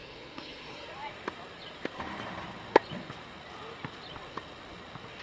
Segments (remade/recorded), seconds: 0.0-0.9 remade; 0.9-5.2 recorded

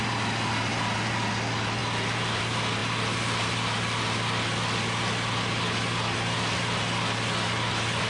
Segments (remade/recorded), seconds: 0.0-8.1 recorded

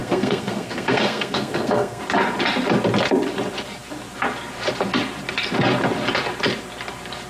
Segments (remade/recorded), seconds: 0.0-2.0 remade; 2.0-7.3 recorded

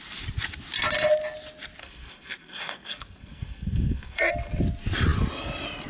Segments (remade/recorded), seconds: 0.0-1.8 recorded; 1.8-4.3 remade; 4.3-5.9 recorded